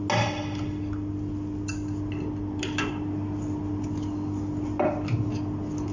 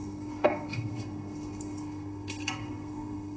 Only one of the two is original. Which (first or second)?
first